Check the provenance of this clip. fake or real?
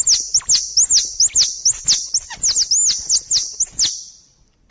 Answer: real